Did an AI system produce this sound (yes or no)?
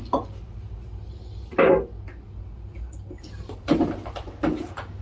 no